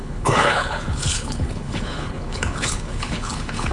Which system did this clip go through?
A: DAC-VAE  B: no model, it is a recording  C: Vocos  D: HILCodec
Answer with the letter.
D